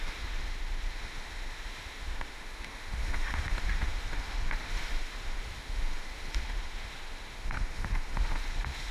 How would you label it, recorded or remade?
remade